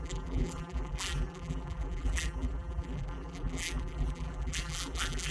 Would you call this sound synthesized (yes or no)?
yes